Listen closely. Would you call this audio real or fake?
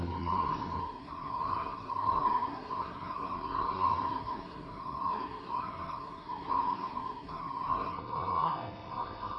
fake